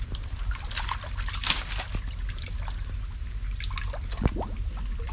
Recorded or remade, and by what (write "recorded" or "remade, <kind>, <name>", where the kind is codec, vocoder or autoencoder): recorded